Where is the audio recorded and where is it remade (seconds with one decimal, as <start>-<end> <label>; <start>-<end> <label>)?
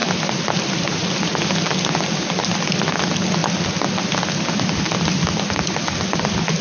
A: 0.0-6.6 recorded